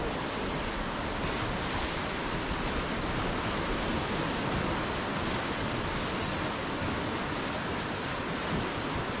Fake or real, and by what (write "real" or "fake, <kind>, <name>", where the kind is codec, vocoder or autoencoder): real